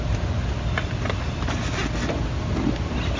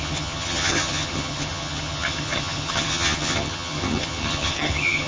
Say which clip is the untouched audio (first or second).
first